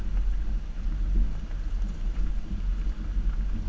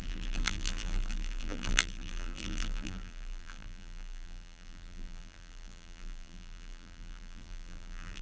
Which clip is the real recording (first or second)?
first